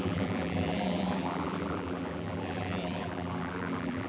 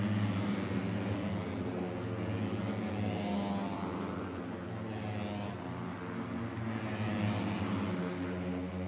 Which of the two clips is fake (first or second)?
first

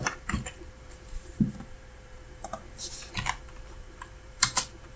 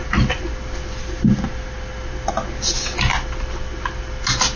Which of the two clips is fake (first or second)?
first